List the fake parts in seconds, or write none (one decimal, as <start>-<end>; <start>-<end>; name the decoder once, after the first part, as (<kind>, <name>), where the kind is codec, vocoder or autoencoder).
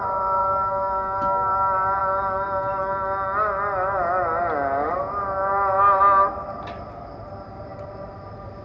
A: none